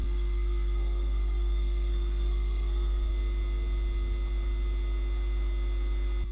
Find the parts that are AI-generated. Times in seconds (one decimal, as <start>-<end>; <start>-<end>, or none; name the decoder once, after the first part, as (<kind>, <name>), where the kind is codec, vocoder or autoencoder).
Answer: 0.0-3.1 (codec, SNAC)

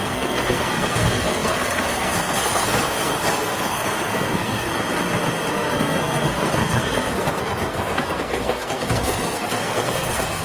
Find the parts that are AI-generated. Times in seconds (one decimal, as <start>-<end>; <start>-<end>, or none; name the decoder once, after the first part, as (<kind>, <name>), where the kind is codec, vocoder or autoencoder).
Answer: 0.0-4.7 (codec, SNAC); 5.5-10.4

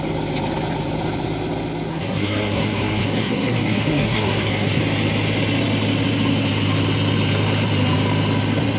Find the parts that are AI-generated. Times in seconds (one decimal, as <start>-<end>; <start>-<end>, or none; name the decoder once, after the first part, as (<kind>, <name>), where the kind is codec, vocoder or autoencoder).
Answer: 1.9-4.8 (codec, SNAC)

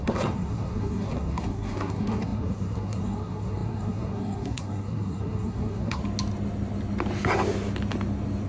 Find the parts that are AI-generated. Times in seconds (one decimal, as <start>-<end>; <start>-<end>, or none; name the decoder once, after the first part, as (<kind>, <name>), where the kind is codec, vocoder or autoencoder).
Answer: 0.0-6.0 (codec, SNAC)

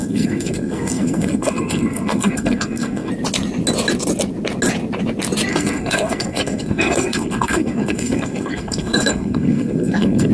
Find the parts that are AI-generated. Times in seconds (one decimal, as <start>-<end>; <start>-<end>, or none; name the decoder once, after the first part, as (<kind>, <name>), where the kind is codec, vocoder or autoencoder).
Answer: 0.0-3.1 (codec, SNAC); 5.5-10.3